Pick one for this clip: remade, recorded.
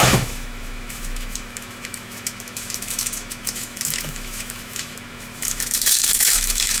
remade